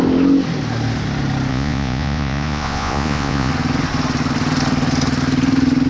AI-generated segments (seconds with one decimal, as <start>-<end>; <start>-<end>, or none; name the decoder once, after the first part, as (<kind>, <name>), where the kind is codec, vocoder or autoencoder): 1.5-3.5 (vocoder, Vocos)